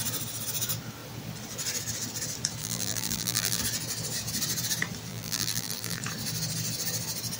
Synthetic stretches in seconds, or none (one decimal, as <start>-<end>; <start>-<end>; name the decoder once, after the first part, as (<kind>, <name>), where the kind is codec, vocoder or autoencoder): 2.6-3.6 (vocoder, BigVGAN v2); 5.1-6.0